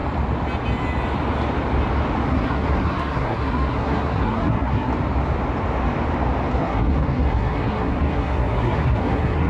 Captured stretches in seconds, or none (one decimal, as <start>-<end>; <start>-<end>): 0.0-2.3; 4.9-6.5